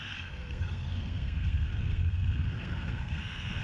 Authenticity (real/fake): fake